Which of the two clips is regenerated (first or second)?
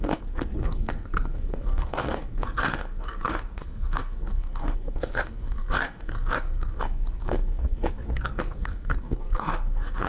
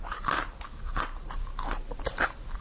first